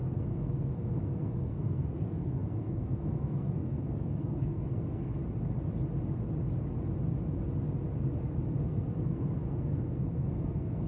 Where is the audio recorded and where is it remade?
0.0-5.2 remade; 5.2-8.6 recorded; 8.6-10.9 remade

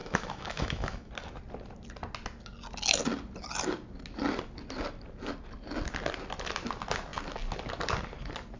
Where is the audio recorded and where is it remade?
0.0-1.1 remade; 1.1-8.6 recorded

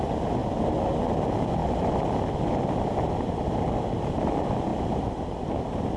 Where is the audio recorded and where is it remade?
0.0-6.0 recorded

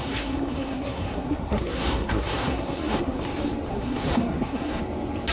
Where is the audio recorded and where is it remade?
0.0-3.2 remade; 3.2-3.7 recorded; 3.7-4.8 remade; 4.8-5.3 recorded

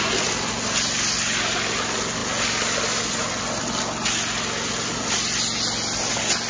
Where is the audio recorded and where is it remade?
0.0-6.5 recorded

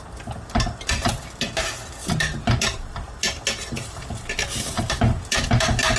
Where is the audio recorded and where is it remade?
0.0-6.0 recorded

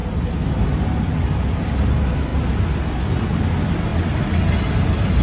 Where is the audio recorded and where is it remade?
0.0-5.2 recorded

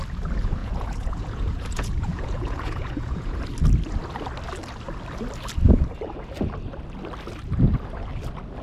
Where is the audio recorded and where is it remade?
0.0-0.6 recorded; 0.6-3.4 remade; 3.4-8.6 recorded